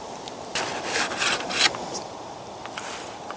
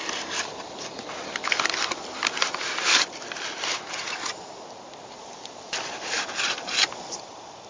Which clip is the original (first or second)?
first